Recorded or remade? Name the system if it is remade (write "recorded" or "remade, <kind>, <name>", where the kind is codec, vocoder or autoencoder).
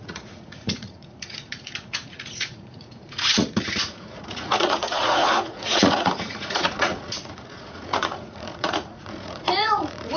remade, vocoder, Vocos